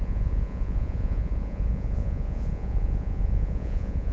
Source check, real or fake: fake